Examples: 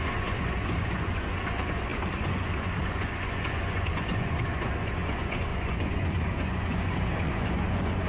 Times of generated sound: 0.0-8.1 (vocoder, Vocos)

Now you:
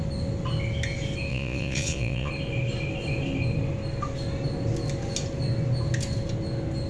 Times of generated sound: 1.3-2.3 (vocoder, Vocos)

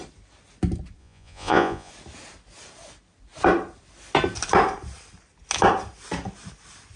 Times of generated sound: 1.0-1.9 (vocoder, Vocos)

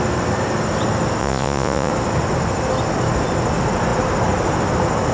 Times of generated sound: 1.2-1.9 (vocoder, Vocos)

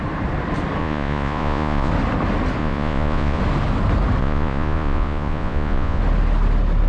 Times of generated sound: 0.8-1.9 (vocoder, Vocos); 2.6-3.4; 4.2-6.0